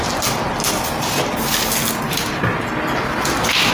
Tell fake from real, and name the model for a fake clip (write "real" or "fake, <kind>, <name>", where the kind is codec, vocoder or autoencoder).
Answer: real